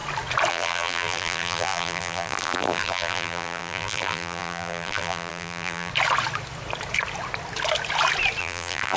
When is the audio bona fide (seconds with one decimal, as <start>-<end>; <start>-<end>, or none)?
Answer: 0.0-0.5; 5.9-8.4